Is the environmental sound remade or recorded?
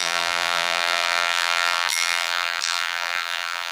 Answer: remade